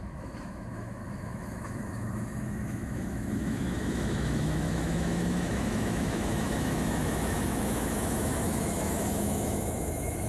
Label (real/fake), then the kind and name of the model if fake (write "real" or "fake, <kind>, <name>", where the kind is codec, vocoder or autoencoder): fake, autoencoder, DAC-VAE